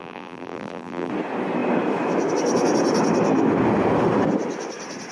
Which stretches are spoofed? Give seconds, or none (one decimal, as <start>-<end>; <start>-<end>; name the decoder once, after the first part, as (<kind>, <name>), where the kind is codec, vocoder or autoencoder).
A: 0.0-1.1 (vocoder, BigVGAN v2)